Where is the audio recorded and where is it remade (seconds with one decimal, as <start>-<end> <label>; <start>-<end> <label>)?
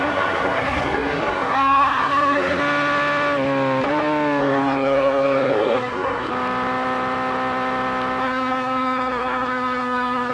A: 0.0-2.6 remade; 2.6-4.4 recorded; 4.4-6.3 remade; 6.3-8.2 recorded; 8.2-10.3 remade